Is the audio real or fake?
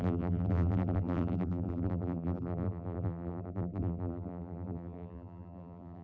fake